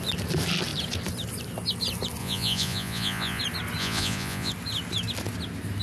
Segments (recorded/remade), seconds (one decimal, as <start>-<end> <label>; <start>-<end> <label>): 0.0-2.2 recorded; 2.2-3.4 remade; 3.4-3.8 recorded; 3.8-4.5 remade; 4.5-5.8 recorded